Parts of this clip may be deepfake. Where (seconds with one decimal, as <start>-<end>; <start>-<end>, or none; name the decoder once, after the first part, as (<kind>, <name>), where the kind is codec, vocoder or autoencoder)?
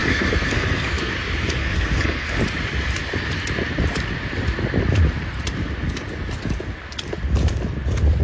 0.0-1.1 (codec, SNAC); 1.6-2.4